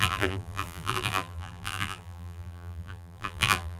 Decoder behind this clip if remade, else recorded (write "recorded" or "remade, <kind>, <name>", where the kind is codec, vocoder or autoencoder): remade, vocoder, BigVGAN v2